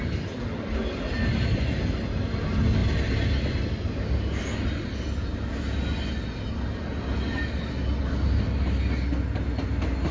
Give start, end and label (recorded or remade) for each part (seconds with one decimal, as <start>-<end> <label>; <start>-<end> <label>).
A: 0.0-10.1 recorded